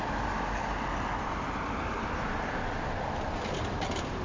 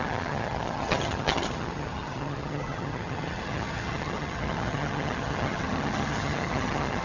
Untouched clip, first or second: first